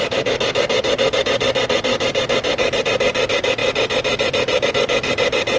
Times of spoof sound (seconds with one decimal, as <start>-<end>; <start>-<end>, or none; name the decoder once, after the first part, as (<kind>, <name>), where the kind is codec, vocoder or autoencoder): none